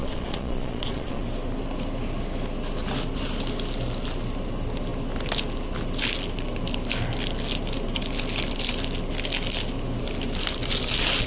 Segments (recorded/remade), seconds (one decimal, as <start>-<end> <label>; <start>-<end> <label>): 0.0-1.2 remade; 1.2-11.3 recorded